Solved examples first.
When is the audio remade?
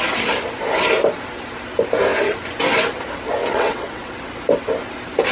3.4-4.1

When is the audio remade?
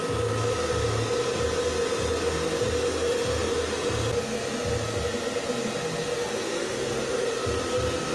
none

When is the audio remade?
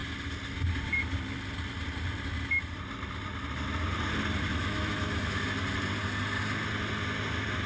4.5-5.4